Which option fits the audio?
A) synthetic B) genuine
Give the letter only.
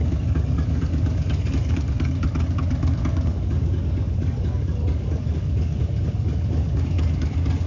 A